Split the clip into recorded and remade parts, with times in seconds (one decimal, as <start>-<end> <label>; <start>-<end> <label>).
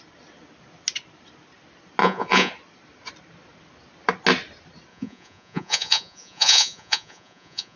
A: 0.0-2.0 recorded; 2.0-2.5 remade; 2.5-4.9 recorded; 4.9-7.8 remade